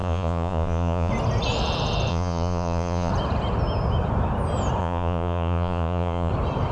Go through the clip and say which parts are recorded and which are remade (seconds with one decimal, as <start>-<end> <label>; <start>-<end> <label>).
0.0-1.1 remade; 1.1-2.1 recorded; 2.1-3.1 remade; 3.1-4.8 recorded; 4.8-6.3 remade; 6.3-6.7 recorded